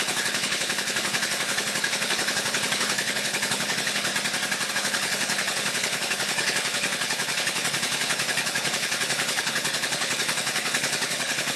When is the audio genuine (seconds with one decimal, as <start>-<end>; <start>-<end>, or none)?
4.1-4.7